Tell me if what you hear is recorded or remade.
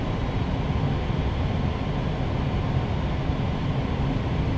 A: recorded